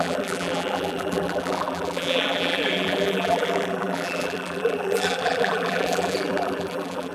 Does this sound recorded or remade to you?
remade